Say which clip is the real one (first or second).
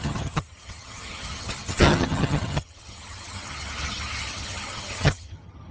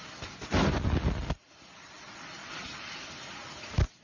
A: second